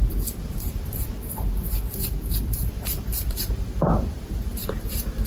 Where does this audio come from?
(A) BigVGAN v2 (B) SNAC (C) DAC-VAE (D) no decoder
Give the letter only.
A